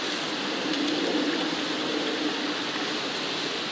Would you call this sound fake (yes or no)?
no